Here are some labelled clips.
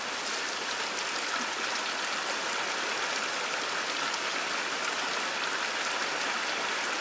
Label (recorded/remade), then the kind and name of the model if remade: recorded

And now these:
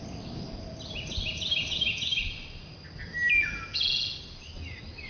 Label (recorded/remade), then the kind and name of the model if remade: recorded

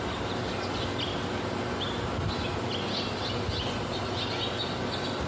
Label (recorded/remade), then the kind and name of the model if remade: recorded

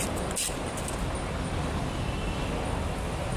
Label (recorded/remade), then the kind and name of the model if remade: recorded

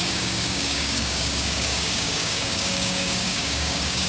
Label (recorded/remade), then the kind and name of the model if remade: remade, codec, DAC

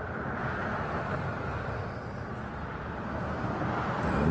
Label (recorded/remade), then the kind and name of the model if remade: recorded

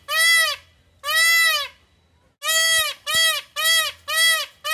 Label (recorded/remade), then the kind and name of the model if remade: recorded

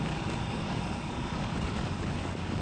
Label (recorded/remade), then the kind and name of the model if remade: remade, codec, DAC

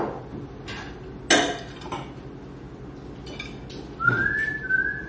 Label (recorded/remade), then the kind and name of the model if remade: recorded